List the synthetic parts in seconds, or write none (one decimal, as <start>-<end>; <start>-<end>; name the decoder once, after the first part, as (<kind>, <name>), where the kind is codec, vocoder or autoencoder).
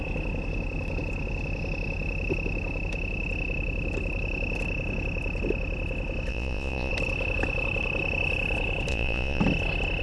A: 6.3-6.9 (vocoder, Vocos); 8.9-9.4